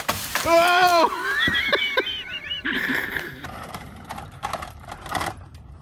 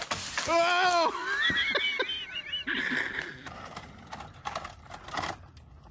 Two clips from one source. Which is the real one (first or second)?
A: second